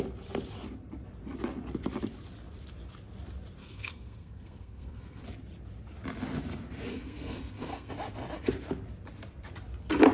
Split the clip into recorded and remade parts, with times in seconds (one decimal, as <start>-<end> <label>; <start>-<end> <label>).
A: 0.0-3.6 recorded; 3.6-5.2 remade; 5.2-6.9 recorded; 6.9-7.9 remade; 7.9-10.1 recorded